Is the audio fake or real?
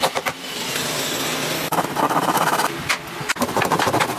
real